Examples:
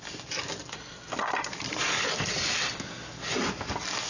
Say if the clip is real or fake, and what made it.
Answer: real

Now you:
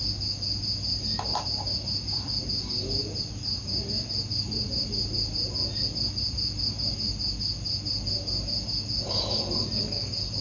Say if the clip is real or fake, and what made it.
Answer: real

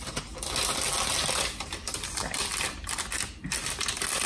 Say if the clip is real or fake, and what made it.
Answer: real